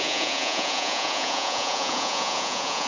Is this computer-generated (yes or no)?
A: yes